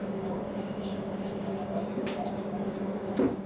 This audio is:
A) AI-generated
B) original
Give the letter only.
A